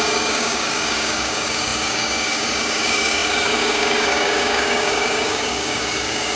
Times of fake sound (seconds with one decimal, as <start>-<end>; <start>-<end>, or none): 0.0-6.4